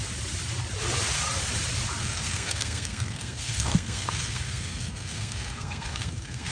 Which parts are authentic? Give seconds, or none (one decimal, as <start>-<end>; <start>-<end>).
0.0-2.0